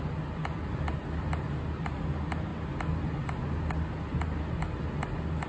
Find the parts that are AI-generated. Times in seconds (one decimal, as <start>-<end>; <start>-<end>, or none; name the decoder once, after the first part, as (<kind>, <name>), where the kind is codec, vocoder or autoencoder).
none